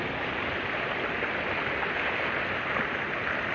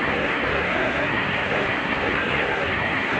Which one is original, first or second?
first